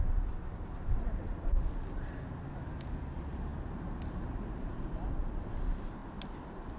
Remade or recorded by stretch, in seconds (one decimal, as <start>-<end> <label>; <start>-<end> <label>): 0.0-6.8 recorded

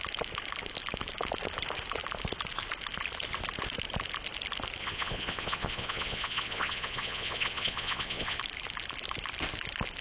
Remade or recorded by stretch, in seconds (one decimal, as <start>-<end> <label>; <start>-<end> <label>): 0.0-4.8 recorded; 4.8-8.4 remade; 8.4-10.0 recorded

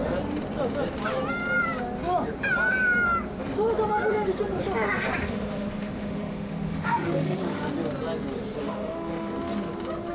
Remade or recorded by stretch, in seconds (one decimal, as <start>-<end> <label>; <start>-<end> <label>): 0.0-5.2 recorded; 5.2-7.6 remade; 7.6-8.6 recorded; 8.6-9.3 remade; 9.3-10.1 recorded